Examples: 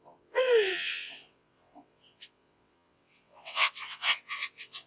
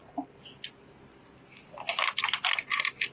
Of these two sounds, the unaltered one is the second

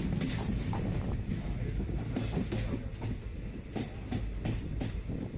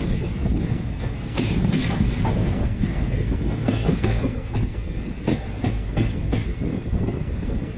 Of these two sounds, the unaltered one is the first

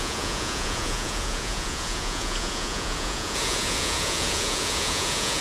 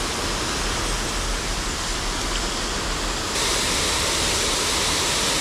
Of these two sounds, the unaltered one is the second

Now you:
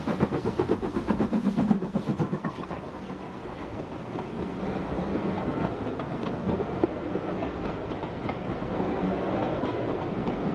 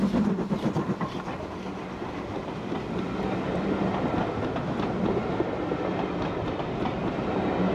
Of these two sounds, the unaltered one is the second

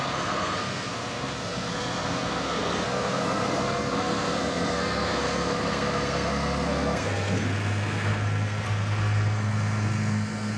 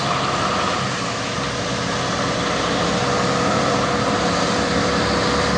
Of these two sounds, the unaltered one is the second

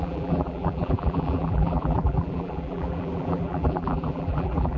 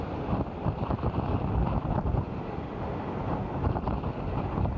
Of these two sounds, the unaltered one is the second